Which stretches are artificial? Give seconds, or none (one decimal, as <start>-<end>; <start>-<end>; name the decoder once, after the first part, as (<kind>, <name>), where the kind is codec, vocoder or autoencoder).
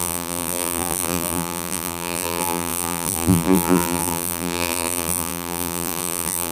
0.0-6.5 (vocoder, BigVGAN v2)